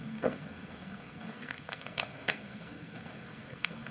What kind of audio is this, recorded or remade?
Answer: remade